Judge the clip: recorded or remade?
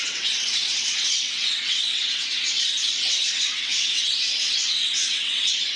remade